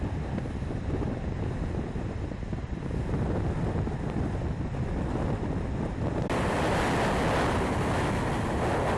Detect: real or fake real